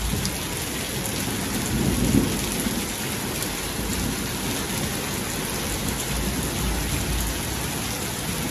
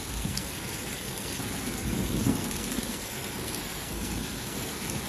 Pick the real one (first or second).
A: first